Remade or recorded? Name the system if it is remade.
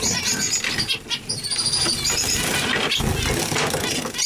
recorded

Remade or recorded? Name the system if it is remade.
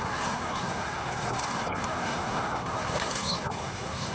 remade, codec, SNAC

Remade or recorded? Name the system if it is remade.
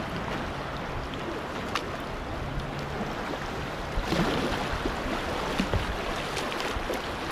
recorded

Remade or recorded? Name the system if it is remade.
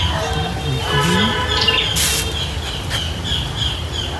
recorded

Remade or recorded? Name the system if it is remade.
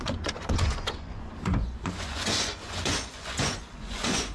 remade, vocoder, Vocos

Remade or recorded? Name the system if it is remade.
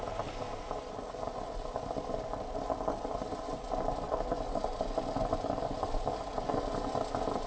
recorded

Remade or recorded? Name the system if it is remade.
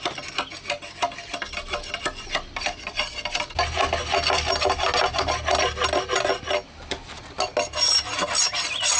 recorded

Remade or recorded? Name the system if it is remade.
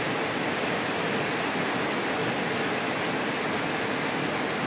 recorded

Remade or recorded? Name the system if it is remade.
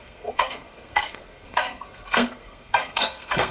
remade, codec, SNAC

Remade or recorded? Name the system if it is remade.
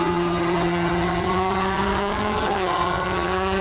remade, vocoder, HiFi-GAN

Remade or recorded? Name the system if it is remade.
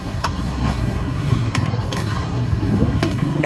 remade, codec, SNAC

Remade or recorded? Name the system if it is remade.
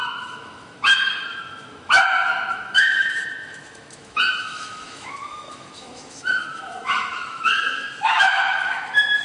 remade, autoencoder, DAC-VAE